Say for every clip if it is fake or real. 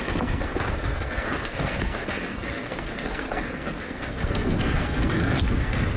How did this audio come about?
fake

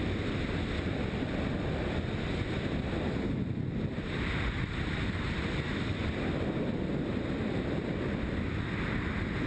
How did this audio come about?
real